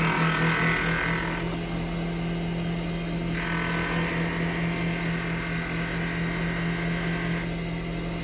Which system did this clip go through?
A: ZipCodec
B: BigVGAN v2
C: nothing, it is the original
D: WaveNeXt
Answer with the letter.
C